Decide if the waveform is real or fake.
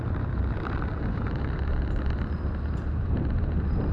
fake